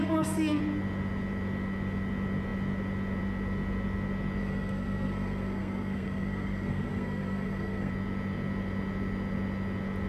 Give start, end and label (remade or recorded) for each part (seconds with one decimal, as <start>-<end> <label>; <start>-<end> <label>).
0.0-0.6 remade; 0.6-4.4 recorded; 4.4-7.9 remade; 7.9-10.1 recorded